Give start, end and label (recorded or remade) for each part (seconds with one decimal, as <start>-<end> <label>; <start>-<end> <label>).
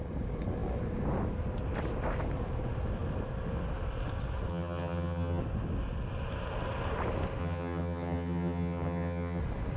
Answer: 0.0-4.5 recorded; 4.5-5.4 remade; 5.4-7.4 recorded; 7.4-9.4 remade; 9.4-9.8 recorded